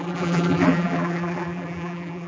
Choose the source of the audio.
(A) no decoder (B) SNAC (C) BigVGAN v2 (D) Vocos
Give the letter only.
C